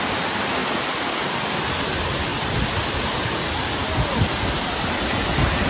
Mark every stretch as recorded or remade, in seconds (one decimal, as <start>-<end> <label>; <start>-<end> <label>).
0.0-5.7 recorded